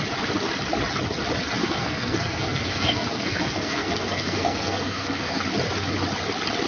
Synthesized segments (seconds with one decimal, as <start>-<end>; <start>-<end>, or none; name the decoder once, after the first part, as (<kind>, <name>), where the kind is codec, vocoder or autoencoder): 1.6-5.4 (codec, SNAC)